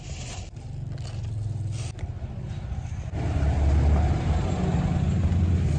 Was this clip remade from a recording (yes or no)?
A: no